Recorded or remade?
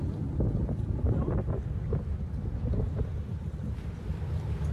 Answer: recorded